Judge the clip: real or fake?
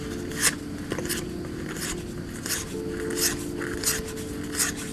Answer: real